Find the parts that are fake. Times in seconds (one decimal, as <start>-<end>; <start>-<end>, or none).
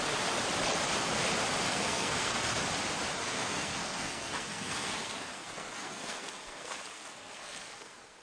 1.7-2.6; 3.2-8.2